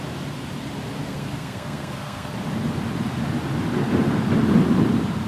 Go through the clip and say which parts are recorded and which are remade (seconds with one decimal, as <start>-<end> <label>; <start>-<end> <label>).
0.0-1.0 recorded; 1.0-2.3 remade; 2.3-5.3 recorded